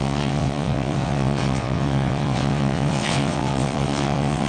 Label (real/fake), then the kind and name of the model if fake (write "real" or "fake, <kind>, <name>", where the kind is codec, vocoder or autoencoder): fake, vocoder, WaveNeXt